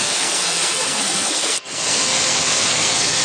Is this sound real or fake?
fake